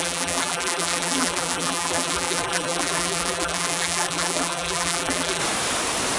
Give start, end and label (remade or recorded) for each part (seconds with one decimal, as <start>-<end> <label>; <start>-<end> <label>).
0.0-5.4 remade; 5.4-6.2 recorded